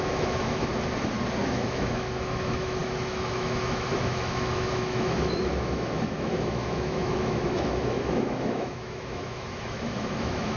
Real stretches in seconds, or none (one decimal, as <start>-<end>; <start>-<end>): 0.7-1.4